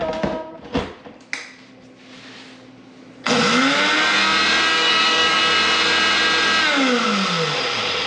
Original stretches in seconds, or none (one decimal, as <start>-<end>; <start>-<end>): 0.0-4.7; 5.4-8.1